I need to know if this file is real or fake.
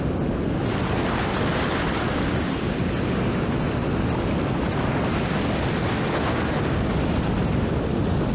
real